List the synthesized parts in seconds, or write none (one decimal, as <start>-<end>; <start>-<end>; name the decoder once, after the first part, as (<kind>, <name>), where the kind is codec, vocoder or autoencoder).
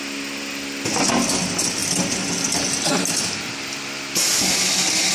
none